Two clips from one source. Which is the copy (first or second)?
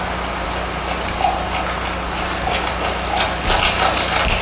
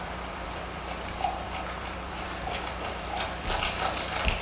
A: second